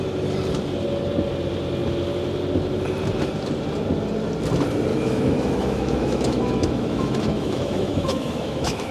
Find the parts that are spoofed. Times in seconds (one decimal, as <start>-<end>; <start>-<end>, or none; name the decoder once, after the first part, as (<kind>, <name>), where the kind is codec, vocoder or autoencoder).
4.9-8.9 (autoencoder, DAC-VAE)